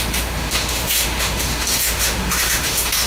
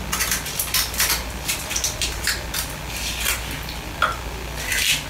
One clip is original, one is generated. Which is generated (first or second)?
first